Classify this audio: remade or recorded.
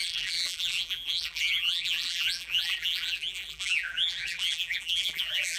remade